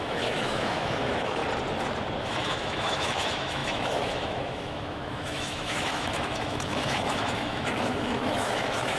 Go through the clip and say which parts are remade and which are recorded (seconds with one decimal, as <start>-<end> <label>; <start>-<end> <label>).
0.0-1.4 remade; 1.4-2.2 recorded; 2.2-9.0 remade